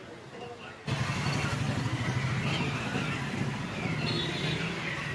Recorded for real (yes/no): yes